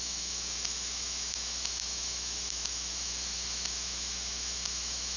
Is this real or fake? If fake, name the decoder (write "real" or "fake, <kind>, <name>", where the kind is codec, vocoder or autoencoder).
fake, autoencoder, DAC-VAE